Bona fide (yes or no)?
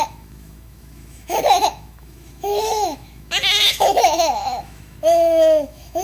no